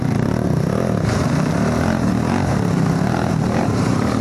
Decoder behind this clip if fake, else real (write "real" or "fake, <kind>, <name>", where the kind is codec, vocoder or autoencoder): fake, vocoder, BigVGAN v2